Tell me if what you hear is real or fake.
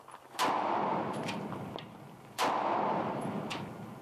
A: real